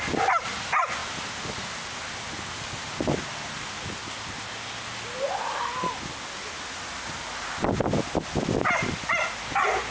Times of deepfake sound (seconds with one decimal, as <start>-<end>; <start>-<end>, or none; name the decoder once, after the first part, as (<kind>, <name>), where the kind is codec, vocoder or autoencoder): none